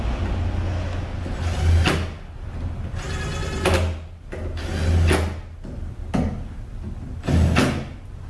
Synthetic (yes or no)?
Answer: no